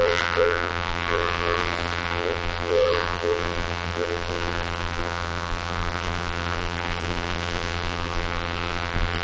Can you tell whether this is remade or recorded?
remade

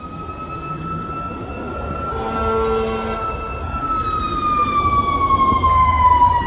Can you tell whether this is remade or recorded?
recorded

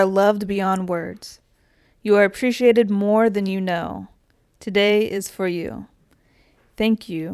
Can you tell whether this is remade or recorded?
remade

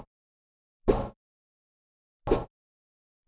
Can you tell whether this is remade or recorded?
recorded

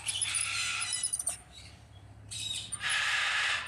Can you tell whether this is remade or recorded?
remade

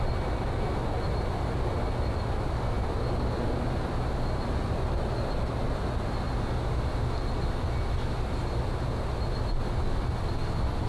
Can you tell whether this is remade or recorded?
recorded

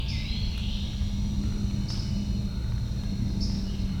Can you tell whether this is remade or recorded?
recorded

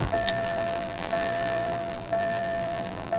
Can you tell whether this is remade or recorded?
remade